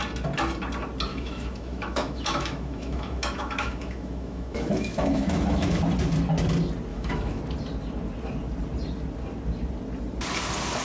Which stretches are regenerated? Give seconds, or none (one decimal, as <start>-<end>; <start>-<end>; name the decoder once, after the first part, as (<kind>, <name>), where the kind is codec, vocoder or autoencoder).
1.1-5.8 (autoencoder, DAC-VAE); 6.9-7.4